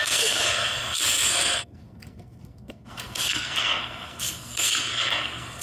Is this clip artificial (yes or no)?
yes